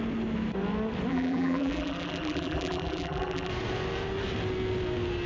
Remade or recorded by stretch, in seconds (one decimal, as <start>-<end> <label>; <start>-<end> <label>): 0.0-1.1 recorded; 1.1-3.5 remade; 3.5-5.3 recorded